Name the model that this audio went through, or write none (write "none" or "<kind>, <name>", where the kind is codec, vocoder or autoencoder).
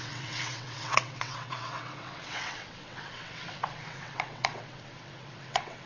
vocoder, WaveNeXt